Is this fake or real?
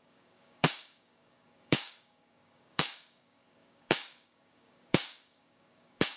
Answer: fake